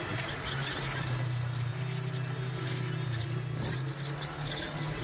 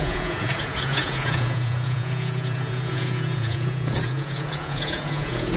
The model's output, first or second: second